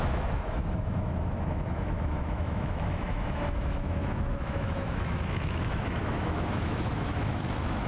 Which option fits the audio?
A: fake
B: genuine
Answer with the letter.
A